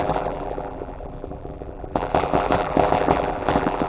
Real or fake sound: fake